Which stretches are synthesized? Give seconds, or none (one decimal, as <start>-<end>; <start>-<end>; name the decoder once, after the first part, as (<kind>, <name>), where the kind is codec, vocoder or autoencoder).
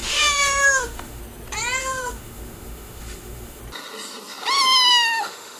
0.0-1.2 (autoencoder, DAC-VAE); 1.8-3.6; 4.9-5.6